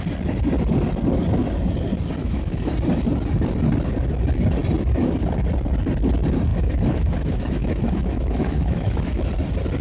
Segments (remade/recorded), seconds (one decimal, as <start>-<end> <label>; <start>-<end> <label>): 0.0-2.2 recorded; 2.2-2.7 remade; 2.7-6.5 recorded; 6.5-9.3 remade; 9.3-9.8 recorded